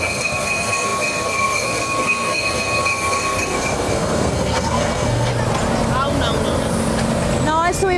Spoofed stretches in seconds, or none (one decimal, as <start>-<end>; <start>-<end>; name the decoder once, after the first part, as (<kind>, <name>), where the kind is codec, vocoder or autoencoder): 0.0-5.3 (codec, SNAC)